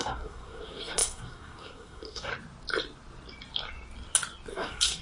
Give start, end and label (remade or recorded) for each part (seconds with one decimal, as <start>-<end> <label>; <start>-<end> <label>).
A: 0.0-2.3 remade; 2.3-4.5 recorded; 4.5-5.0 remade